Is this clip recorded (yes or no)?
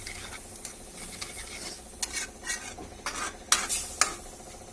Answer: yes